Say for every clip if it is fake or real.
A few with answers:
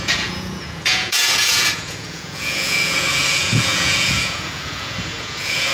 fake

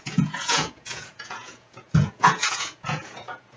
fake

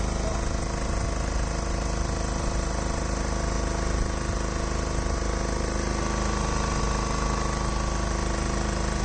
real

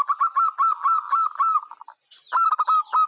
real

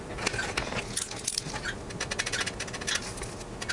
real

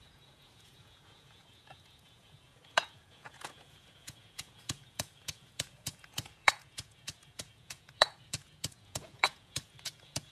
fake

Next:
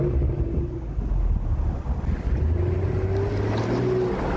real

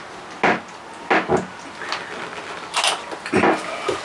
real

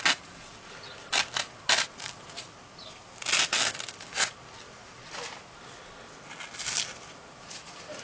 real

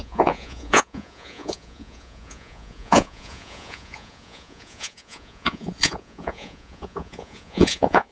fake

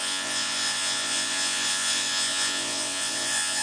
fake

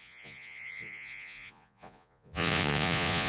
fake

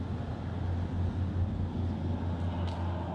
real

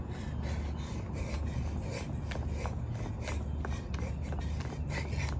real